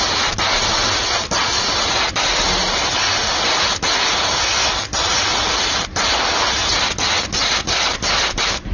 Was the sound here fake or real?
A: real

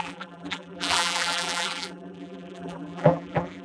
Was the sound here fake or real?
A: fake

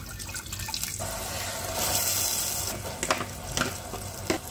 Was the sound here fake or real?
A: real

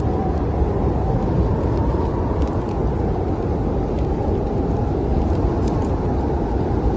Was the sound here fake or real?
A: real